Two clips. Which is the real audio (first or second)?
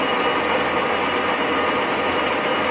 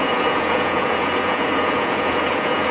first